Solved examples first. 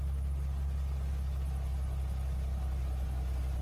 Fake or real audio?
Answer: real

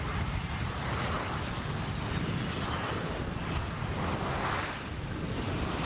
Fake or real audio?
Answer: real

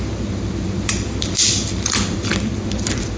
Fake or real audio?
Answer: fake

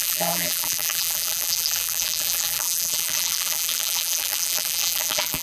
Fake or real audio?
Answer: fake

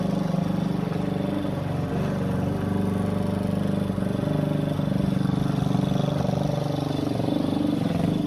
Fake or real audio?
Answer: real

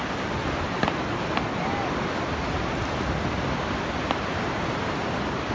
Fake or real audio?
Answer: real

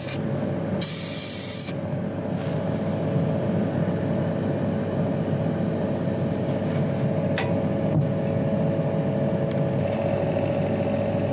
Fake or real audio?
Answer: real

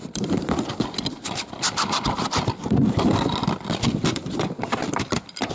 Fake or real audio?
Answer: fake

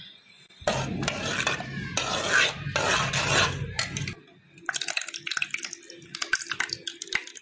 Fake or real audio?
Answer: real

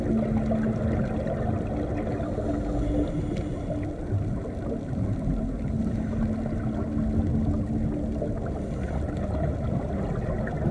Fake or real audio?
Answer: real